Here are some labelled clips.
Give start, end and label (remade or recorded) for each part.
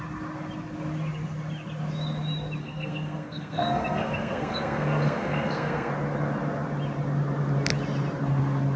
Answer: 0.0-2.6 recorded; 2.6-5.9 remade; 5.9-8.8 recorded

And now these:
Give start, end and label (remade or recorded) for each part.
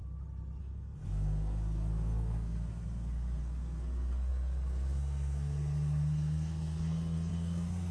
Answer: 0.0-0.6 recorded; 0.6-7.9 remade